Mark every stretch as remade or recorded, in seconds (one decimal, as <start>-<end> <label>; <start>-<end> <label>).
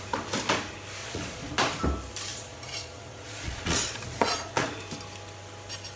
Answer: 0.0-1.0 recorded; 1.0-1.5 remade; 1.5-2.3 recorded; 2.3-4.8 remade; 4.8-6.0 recorded